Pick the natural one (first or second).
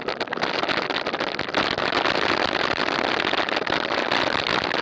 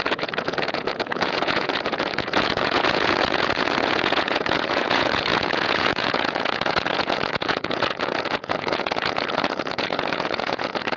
first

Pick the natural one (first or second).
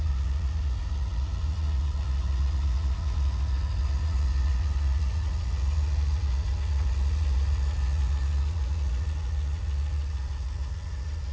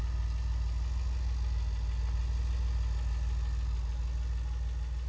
second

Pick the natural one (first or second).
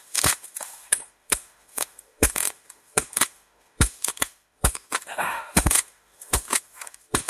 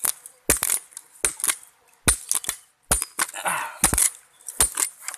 second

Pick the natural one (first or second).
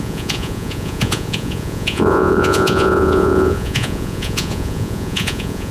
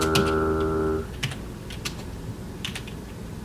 second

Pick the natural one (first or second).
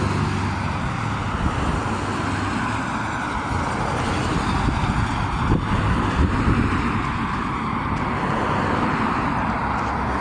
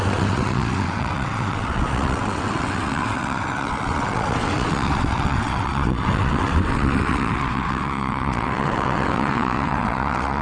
first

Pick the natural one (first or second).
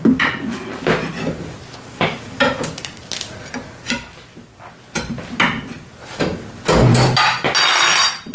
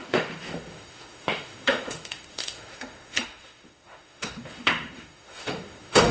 first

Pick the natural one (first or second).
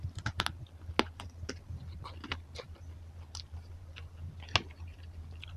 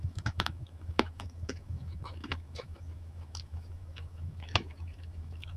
first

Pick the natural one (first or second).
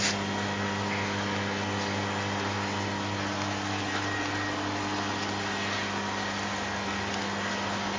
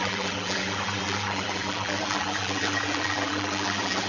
first